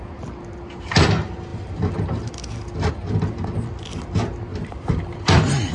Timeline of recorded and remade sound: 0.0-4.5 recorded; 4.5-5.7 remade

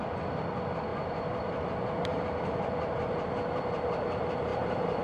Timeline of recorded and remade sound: 0.0-0.9 recorded; 0.9-1.7 remade; 1.7-2.1 recorded; 2.1-3.6 remade; 3.6-4.5 recorded; 4.5-5.0 remade

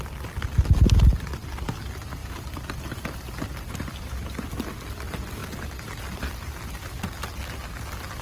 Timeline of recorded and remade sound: 0.0-2.2 recorded; 2.2-4.7 remade; 4.7-5.4 recorded; 5.4-6.5 remade; 6.5-8.2 recorded

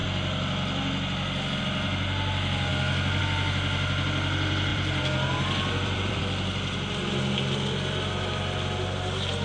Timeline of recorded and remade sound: 0.0-4.7 recorded; 4.7-6.2 remade; 6.2-9.4 recorded

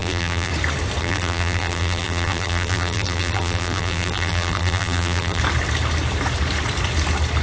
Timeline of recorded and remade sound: 0.0-0.5 remade; 0.5-1.0 recorded; 1.0-5.4 remade; 5.4-7.4 recorded

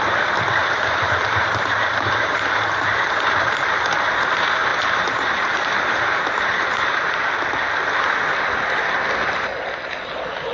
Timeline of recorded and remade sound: 0.0-0.6 recorded; 0.6-3.9 remade; 3.9-4.7 recorded; 4.7-7.2 remade; 7.2-10.5 recorded

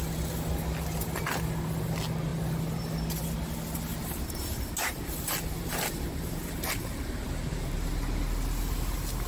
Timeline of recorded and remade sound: 0.0-3.9 recorded; 3.9-7.7 remade; 7.7-9.3 recorded